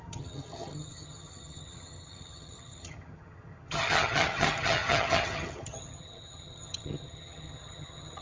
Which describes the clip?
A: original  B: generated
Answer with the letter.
B